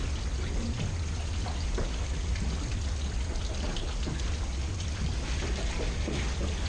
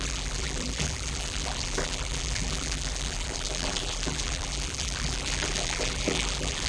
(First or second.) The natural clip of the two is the first